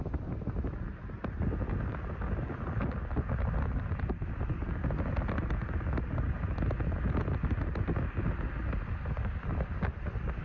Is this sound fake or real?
real